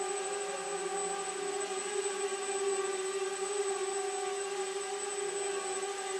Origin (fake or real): real